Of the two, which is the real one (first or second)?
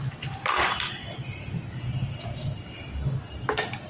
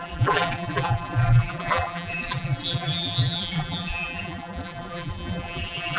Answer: first